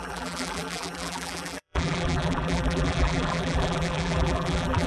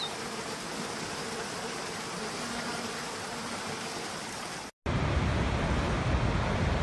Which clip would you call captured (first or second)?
second